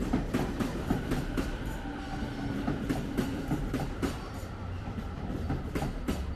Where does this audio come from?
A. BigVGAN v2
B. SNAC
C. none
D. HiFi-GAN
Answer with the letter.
A